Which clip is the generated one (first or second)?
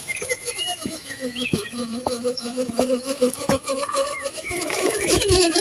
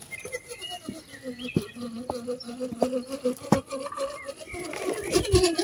first